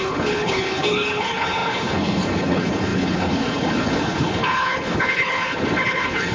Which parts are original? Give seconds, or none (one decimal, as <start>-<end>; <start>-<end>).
none

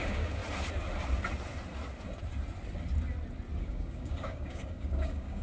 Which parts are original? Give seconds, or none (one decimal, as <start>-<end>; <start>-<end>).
0.4-3.6

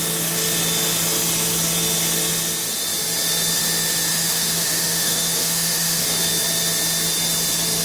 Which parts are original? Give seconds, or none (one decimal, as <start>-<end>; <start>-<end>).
0.0-4.1; 6.0-7.8